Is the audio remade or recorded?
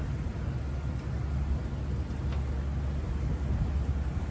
recorded